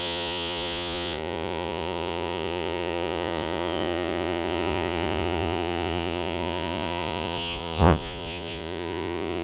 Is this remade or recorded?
remade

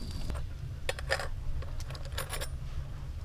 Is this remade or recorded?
recorded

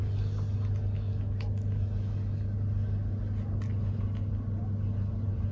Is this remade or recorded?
recorded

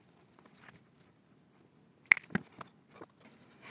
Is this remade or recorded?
recorded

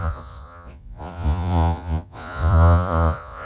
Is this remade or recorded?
remade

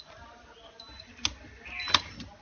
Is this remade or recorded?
recorded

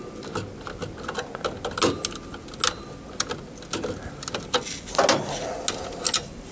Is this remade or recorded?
recorded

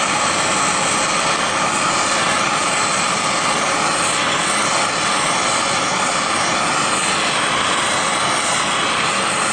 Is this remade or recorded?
recorded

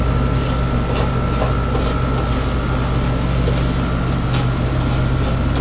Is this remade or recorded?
recorded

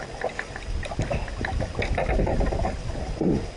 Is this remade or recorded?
recorded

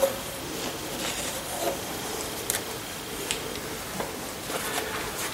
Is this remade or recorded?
recorded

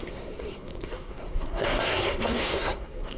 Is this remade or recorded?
remade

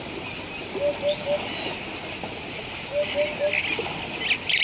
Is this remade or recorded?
recorded